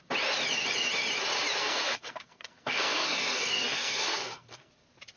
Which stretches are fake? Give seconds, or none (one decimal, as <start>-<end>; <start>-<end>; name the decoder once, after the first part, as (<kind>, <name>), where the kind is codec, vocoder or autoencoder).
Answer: 1.6-4.7 (codec, SNAC)